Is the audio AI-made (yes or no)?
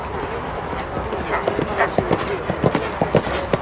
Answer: no